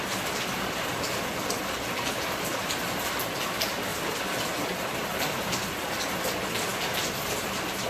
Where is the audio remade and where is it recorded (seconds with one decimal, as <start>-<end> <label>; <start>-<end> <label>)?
0.0-7.9 recorded